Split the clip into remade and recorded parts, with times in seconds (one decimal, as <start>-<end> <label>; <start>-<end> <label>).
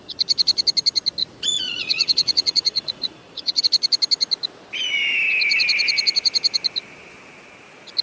0.0-1.2 recorded; 1.2-3.6 remade; 3.6-8.0 recorded